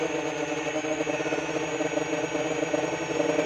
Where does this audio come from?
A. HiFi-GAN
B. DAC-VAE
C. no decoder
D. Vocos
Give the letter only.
C